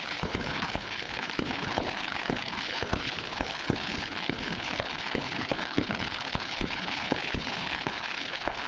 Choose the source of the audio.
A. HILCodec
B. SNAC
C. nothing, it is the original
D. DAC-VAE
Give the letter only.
A